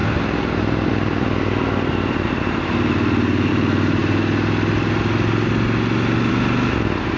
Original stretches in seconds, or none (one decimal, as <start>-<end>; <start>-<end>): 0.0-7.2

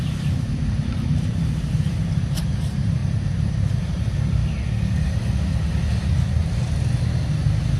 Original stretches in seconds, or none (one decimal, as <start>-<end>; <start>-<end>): 4.4-7.8

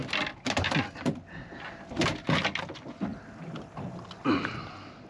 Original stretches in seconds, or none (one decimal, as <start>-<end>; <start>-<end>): 0.0-5.1

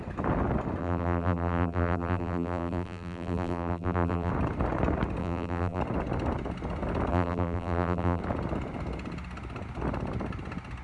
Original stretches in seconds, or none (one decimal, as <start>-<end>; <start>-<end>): 0.0-0.8; 4.3-5.2; 5.8-7.1; 8.2-10.8

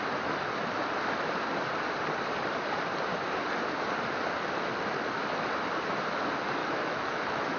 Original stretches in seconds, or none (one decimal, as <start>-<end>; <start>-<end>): 0.0-6.6

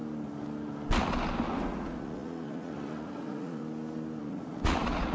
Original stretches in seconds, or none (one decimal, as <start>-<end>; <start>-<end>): 0.0-1.5; 3.6-4.2

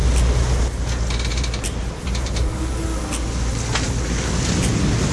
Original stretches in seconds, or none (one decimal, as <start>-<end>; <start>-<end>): 0.0-1.3; 2.8-5.1

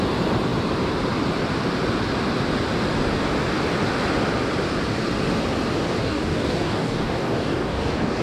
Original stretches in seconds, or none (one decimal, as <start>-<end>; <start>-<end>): 0.0-6.0